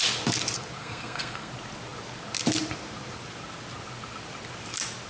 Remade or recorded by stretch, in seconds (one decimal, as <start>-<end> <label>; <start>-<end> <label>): 0.0-0.8 recorded; 0.8-1.5 remade; 1.5-5.1 recorded